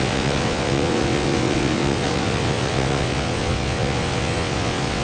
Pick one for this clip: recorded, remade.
remade